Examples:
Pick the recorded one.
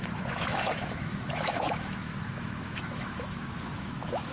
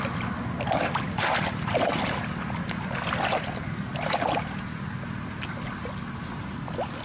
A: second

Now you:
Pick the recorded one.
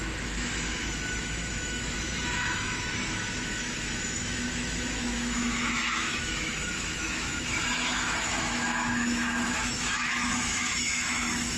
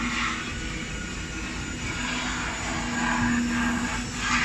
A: second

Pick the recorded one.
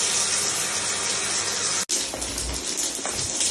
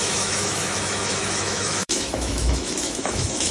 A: first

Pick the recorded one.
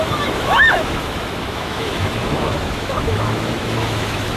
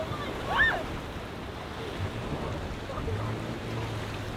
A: second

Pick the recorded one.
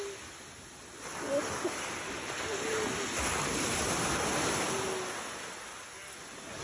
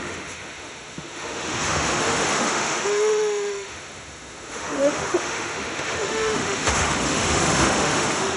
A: first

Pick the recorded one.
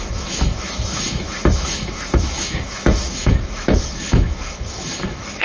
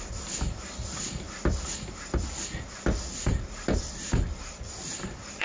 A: second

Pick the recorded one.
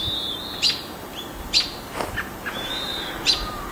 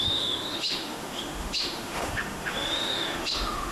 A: first